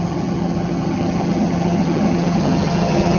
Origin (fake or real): fake